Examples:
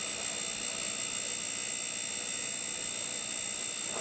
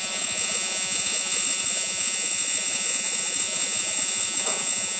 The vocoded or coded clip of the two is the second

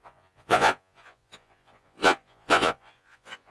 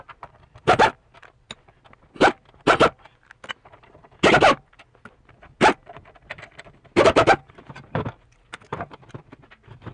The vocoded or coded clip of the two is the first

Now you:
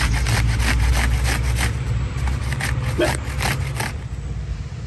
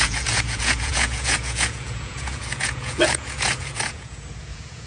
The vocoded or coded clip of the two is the second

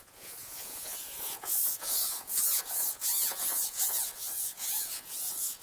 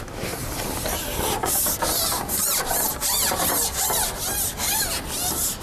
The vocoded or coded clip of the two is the first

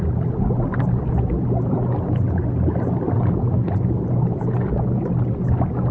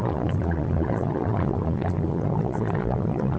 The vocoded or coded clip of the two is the second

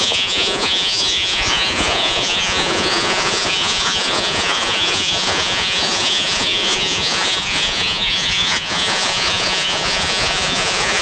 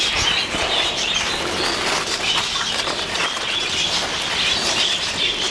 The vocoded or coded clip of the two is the first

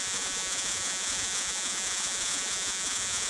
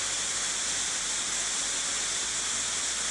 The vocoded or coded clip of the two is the first